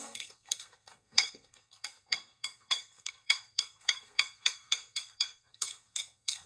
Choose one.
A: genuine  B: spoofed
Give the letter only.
B